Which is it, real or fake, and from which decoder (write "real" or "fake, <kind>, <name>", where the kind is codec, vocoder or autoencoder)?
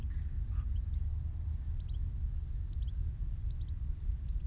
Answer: real